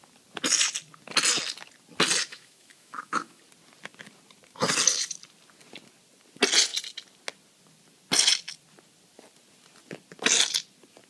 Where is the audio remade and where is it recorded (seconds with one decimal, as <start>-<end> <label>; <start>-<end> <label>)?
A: 0.0-2.3 recorded; 2.3-3.4 remade; 3.4-11.1 recorded